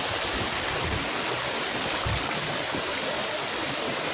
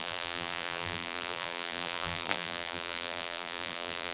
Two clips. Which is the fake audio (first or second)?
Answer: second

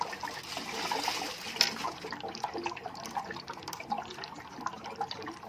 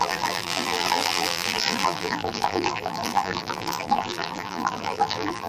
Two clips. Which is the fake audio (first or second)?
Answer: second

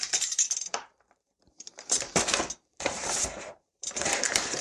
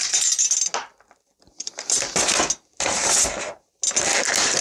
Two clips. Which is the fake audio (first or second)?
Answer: first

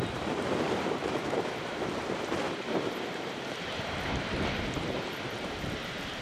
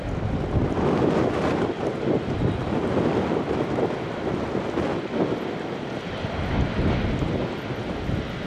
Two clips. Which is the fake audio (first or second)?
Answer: first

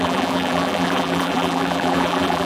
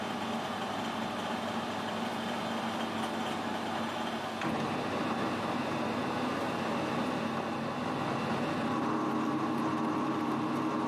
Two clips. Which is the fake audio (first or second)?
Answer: first